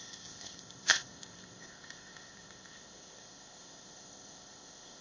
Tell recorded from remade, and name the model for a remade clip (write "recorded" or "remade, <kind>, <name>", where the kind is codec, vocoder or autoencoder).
remade, codec, ZipCodec